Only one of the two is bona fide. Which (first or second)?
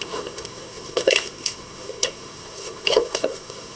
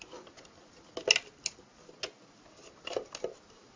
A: second